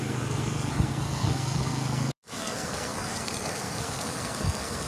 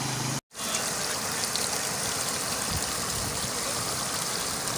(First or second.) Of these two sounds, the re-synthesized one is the first